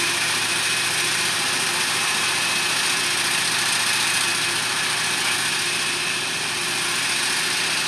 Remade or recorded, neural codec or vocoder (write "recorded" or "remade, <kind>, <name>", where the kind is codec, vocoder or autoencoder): recorded